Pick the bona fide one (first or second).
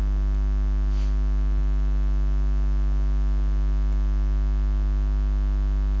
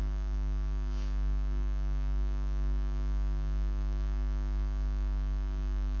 first